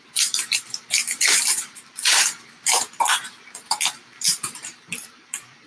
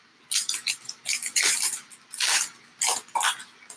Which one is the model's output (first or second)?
first